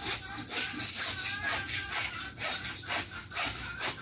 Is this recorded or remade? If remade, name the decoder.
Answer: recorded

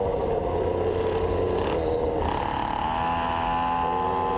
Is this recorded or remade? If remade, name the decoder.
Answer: recorded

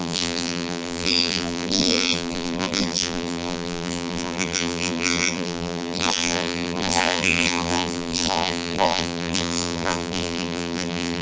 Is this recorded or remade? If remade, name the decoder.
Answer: remade, vocoder, BigVGAN v2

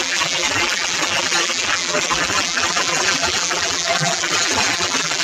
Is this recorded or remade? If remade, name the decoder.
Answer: remade, vocoder, BigVGAN v2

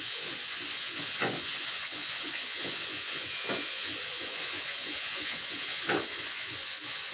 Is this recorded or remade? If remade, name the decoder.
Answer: remade, vocoder, Vocos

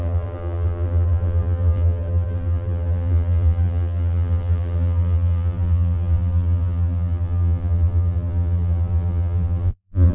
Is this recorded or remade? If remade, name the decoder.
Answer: remade, vocoder, BigVGAN v2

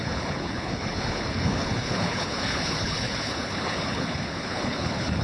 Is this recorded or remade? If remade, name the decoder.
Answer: remade, codec, HILCodec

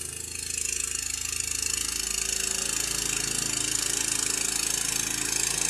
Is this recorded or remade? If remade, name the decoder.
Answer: recorded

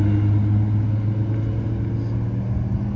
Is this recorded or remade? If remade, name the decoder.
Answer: recorded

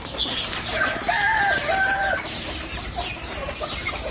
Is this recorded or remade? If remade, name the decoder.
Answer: remade, vocoder, BigVGAN v2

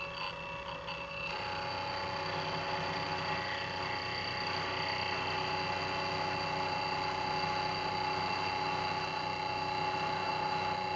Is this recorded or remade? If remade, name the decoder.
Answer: recorded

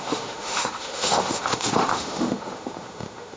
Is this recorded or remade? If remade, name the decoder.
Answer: remade, autoencoder, DAC-VAE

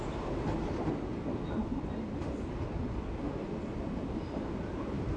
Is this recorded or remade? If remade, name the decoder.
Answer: recorded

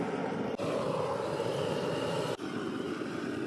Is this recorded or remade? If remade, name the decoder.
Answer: remade, vocoder, BigVGAN v2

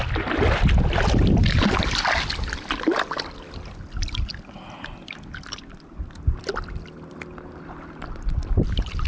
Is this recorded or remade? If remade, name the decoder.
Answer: recorded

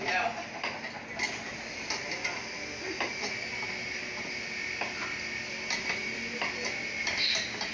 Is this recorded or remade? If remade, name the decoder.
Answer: recorded